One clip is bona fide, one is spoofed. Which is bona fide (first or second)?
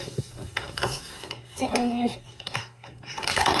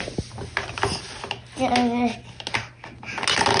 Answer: second